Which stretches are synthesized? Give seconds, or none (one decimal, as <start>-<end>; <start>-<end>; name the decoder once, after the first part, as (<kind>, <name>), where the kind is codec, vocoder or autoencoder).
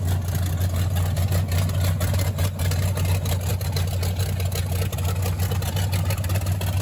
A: none